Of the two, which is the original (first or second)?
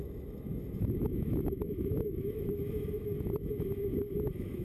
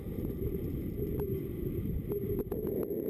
second